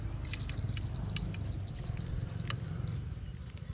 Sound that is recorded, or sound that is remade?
recorded